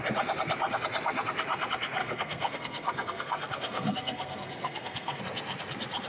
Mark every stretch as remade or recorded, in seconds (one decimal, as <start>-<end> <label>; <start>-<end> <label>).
0.0-2.0 recorded; 2.0-5.2 remade; 5.2-6.1 recorded

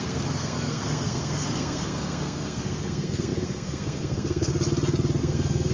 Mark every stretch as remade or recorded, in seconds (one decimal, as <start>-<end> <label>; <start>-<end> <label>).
0.0-4.5 remade; 4.5-5.2 recorded; 5.2-5.7 remade

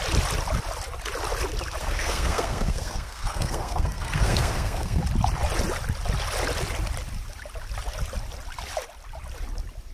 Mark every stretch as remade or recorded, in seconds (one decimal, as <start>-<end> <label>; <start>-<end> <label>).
0.0-1.8 recorded; 1.8-5.0 remade; 5.0-9.9 recorded

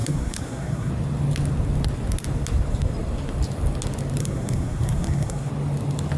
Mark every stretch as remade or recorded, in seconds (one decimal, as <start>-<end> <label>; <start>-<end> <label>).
0.0-0.9 remade; 0.9-4.2 recorded; 4.2-5.5 remade; 5.5-6.2 recorded